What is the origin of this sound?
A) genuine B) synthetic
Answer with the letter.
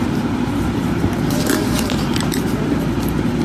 B